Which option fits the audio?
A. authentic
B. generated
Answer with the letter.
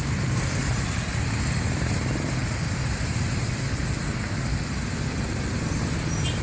A